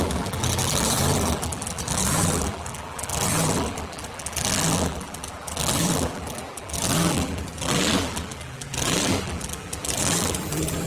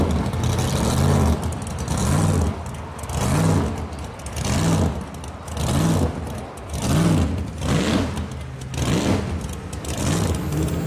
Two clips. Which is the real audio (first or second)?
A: second